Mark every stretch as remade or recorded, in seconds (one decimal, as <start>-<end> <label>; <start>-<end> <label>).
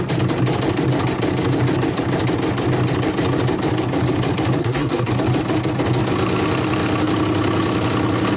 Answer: 0.0-4.6 recorded; 4.6-5.1 remade; 5.1-8.4 recorded